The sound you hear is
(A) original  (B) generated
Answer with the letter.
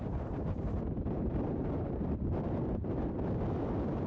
B